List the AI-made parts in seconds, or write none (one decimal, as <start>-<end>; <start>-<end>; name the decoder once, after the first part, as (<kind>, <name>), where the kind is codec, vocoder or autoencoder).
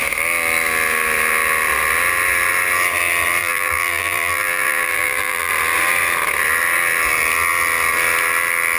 3.4-5.5 (vocoder, BigVGAN v2)